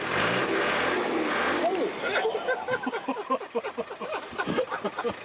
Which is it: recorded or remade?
recorded